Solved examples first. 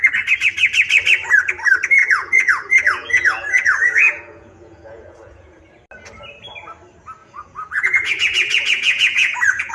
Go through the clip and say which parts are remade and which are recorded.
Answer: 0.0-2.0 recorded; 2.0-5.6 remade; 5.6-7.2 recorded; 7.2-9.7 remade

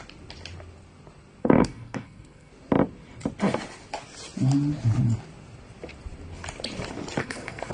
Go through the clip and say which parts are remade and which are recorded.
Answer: 0.0-1.4 recorded; 1.4-2.5 remade; 2.5-7.2 recorded; 7.2-7.7 remade

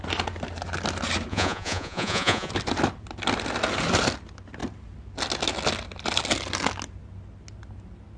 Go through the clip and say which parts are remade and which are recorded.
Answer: 0.0-1.3 recorded; 1.3-2.5 remade; 2.5-8.2 recorded

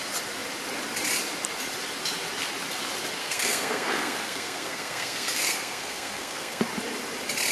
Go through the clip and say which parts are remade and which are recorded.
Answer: 0.0-3.2 recorded; 3.2-6.6 remade; 6.6-7.5 recorded